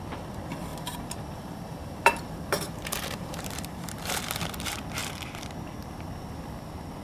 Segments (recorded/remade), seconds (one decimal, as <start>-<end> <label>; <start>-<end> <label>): 0.0-0.7 recorded; 0.7-4.2 remade; 4.2-7.0 recorded

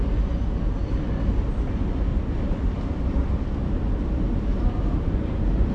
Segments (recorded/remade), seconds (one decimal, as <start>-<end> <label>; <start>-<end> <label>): 0.0-2.1 recorded; 2.1-5.7 remade

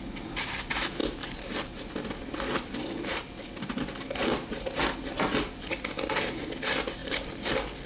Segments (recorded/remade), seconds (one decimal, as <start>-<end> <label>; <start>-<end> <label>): 0.0-1.0 recorded; 1.0-1.9 remade; 1.9-4.2 recorded; 4.2-4.7 remade; 4.7-7.0 recorded; 7.0-7.5 remade; 7.5-7.9 recorded

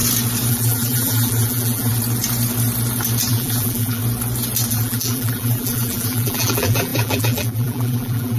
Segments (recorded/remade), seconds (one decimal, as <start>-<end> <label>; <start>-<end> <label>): 0.0-0.5 recorded; 0.5-1.9 remade; 1.9-3.3 recorded; 3.3-4.0 remade; 4.0-4.7 recorded; 4.7-8.4 remade

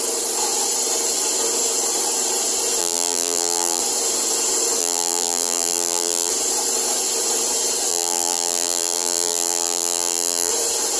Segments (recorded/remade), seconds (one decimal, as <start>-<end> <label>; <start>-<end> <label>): 0.0-2.8 recorded; 2.8-3.8 remade; 3.8-4.8 recorded; 4.8-6.3 remade; 6.3-7.9 recorded; 7.9-10.5 remade; 10.5-11.0 recorded

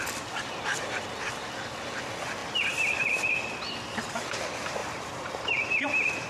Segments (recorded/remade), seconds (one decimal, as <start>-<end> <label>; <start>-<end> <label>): 0.0-4.8 recorded; 4.8-6.3 remade

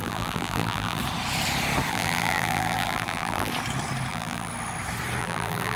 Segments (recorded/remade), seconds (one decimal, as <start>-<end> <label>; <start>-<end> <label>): 0.0-1.0 remade; 1.0-1.9 recorded; 1.9-3.5 remade; 3.5-4.1 recorded; 4.1-4.5 remade; 4.5-5.2 recorded; 5.2-5.8 remade